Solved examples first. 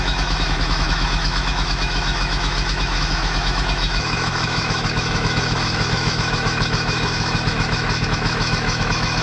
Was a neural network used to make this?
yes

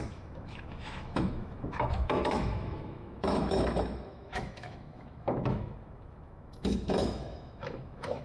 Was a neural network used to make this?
yes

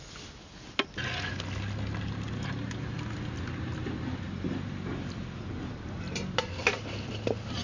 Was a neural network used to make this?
no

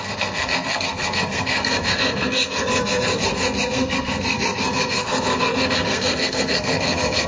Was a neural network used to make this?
yes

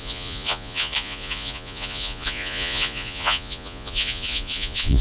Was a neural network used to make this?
yes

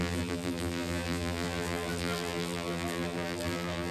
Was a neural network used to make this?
yes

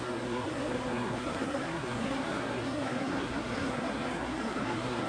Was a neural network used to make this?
yes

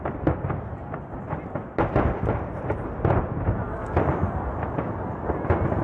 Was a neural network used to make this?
no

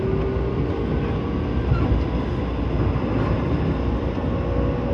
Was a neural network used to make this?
no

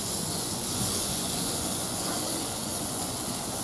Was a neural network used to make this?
yes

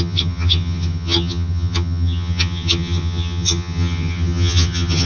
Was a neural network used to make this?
yes